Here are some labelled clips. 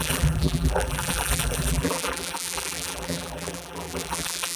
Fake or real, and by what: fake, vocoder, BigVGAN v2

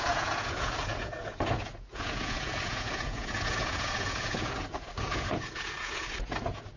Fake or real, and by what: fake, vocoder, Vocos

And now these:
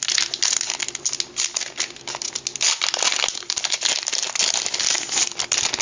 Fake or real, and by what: real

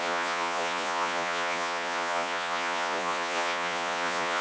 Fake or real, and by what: fake, vocoder, Vocos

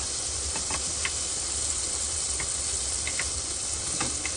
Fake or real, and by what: real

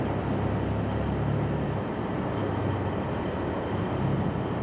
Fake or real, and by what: real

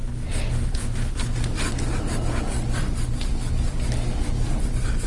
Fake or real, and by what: real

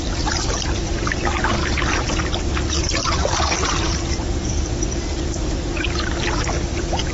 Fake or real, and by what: real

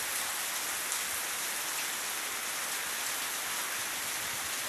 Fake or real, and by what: real